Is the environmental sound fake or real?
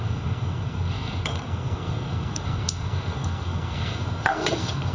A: fake